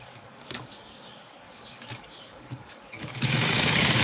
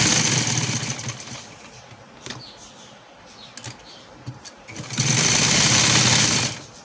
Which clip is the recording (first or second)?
second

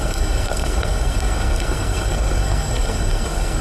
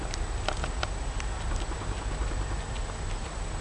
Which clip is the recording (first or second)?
second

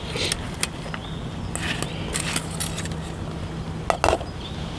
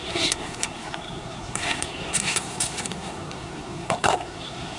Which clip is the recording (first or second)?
first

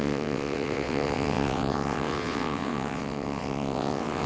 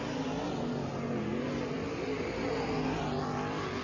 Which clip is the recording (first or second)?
second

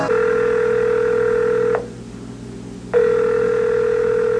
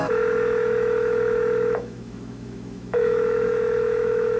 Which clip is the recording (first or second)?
first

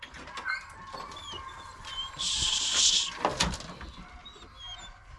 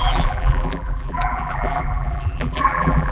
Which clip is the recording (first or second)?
first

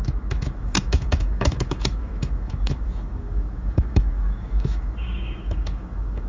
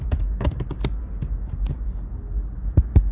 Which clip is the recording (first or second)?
second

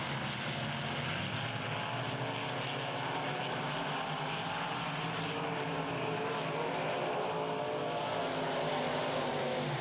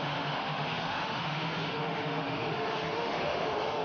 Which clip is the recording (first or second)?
first